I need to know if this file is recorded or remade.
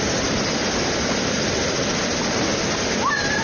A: recorded